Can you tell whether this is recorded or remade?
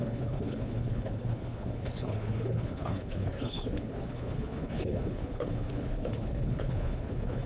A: remade